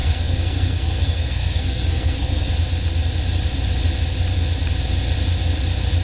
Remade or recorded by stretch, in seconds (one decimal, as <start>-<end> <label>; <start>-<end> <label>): 0.0-2.5 remade; 2.5-6.0 recorded